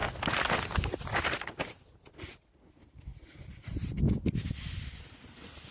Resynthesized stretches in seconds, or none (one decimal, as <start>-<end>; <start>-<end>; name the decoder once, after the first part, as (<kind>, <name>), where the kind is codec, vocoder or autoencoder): none